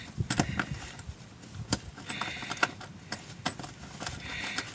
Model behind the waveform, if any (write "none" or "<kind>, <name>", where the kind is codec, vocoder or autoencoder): none